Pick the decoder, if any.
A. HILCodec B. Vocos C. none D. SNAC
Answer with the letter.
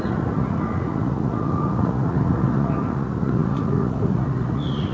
B